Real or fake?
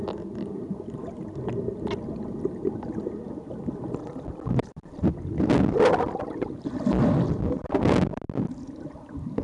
real